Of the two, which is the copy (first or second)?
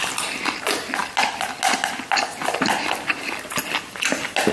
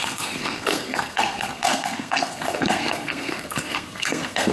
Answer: second